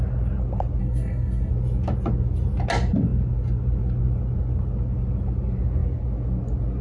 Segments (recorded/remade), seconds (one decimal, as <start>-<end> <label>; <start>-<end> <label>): 0.0-0.8 recorded; 0.8-1.5 remade; 1.5-6.8 recorded